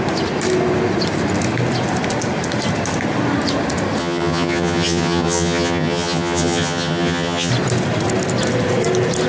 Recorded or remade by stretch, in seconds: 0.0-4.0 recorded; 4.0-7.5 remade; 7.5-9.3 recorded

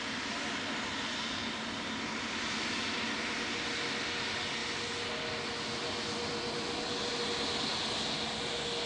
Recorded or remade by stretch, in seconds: 0.0-8.9 recorded

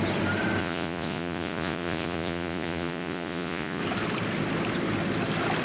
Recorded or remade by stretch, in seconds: 0.0-0.6 recorded; 0.6-3.8 remade; 3.8-5.6 recorded

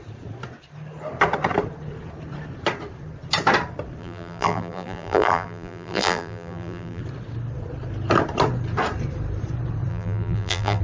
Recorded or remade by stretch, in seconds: 0.0-4.0 recorded; 4.0-7.0 remade; 7.0-9.9 recorded; 9.9-10.8 remade

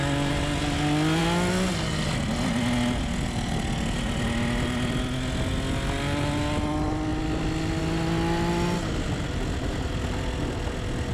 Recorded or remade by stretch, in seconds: 0.0-11.1 recorded

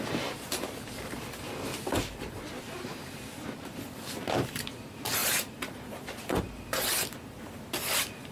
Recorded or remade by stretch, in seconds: 0.0-8.3 remade

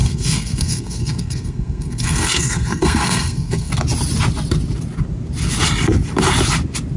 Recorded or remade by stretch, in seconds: 0.0-3.7 remade; 3.7-7.0 recorded

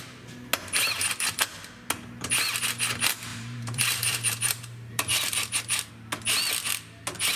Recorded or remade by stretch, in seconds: 0.0-3.3 recorded; 3.3-5.9 remade; 5.9-7.4 recorded